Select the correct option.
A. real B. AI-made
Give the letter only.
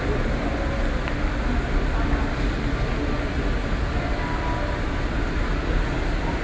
A